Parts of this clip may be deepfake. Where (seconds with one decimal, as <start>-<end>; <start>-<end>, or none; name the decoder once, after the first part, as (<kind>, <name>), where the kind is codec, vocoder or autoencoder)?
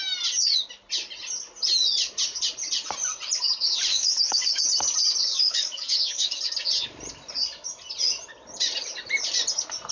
3.9-4.6 (codec, DAC); 5.3-6.4